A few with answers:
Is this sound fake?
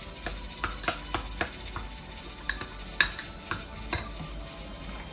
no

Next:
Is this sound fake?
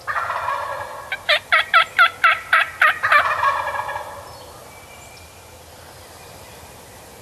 no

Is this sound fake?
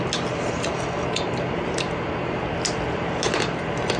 no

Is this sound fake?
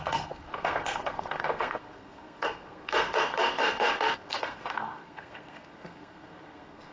yes